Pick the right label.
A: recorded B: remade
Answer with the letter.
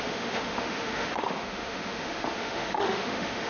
B